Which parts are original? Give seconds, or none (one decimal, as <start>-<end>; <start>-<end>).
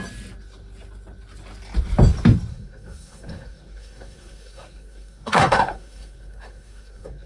0.0-2.5